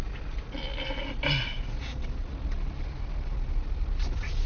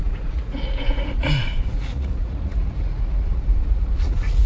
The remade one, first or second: second